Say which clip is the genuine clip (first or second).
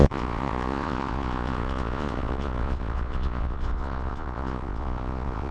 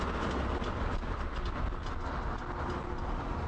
second